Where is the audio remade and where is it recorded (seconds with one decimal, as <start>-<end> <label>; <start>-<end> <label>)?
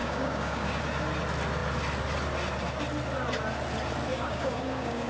0.0-0.8 remade; 0.8-4.1 recorded; 4.1-5.1 remade